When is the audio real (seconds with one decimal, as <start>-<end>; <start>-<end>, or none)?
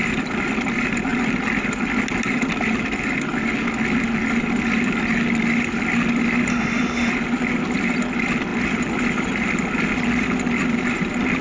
0.0-6.5; 7.1-11.4